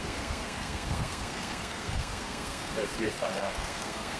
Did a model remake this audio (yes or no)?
yes